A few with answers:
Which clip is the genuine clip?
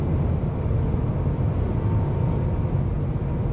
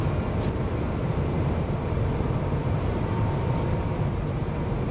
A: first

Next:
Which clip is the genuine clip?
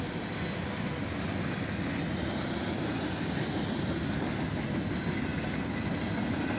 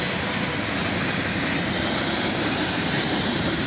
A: first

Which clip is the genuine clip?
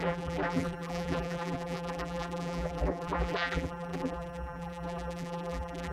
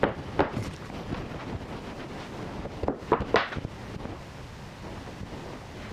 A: second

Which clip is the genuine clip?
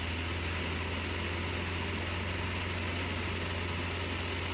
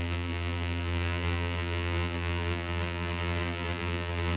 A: first